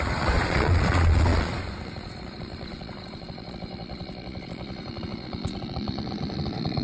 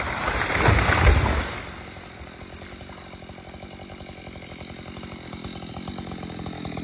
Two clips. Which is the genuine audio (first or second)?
second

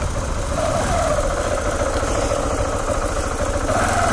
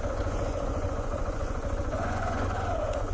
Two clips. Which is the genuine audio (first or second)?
first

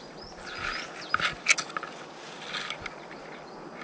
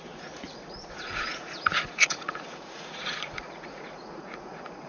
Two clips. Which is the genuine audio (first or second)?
first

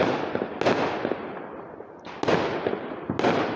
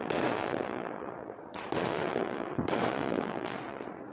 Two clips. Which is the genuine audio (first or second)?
first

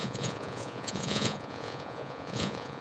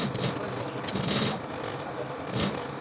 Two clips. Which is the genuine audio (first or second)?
second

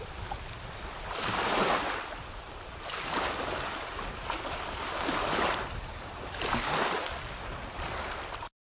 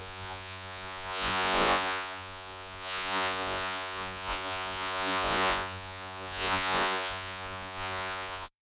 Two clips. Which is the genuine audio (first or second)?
first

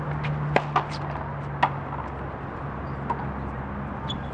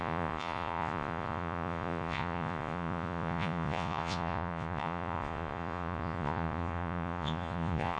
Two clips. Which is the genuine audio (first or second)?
first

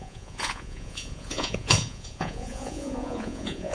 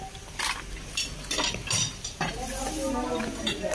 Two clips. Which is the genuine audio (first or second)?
second